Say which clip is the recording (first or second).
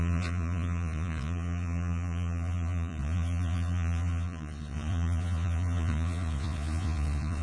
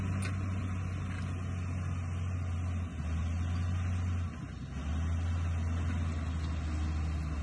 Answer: second